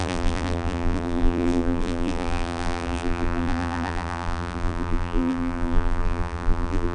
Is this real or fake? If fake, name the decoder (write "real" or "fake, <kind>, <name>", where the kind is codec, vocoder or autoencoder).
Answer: fake, vocoder, BigVGAN v2